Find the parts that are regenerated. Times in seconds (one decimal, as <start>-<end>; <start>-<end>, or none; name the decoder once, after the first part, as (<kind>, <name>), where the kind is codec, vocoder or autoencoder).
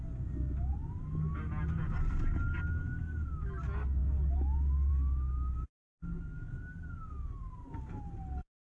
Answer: none